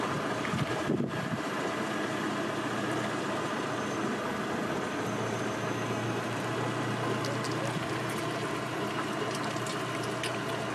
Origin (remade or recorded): recorded